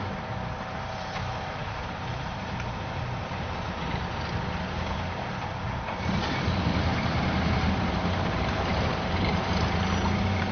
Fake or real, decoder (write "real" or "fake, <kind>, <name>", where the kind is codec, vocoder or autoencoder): fake, vocoder, BigVGAN v2